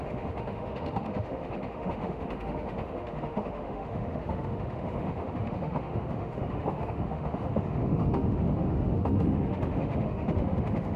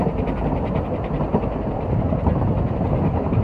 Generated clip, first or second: first